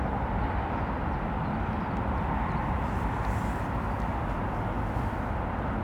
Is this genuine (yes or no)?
yes